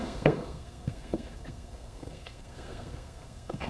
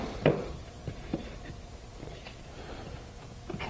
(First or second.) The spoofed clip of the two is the first